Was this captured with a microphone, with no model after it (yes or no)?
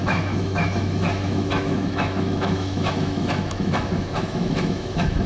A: no